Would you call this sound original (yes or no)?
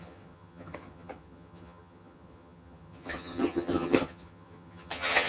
no